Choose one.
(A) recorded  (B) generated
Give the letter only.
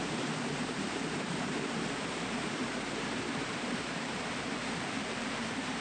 B